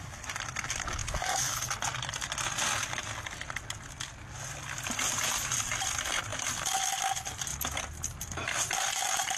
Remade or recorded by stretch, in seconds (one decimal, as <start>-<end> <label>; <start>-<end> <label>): 0.0-9.4 recorded